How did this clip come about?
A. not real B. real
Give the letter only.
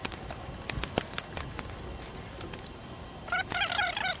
B